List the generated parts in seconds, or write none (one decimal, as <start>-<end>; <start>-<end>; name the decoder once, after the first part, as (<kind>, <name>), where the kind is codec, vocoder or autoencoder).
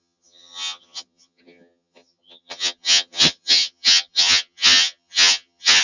0.0-5.8 (vocoder, HiFi-GAN)